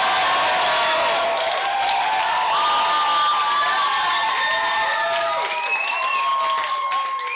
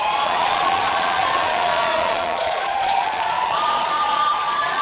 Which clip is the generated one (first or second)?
second